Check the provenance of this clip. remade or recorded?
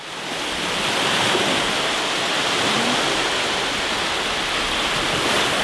recorded